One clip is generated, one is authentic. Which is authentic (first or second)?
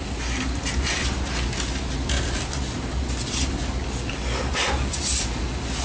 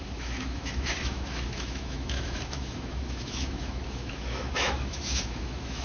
first